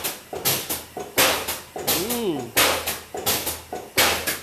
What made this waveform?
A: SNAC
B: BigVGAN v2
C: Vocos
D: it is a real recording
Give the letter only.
D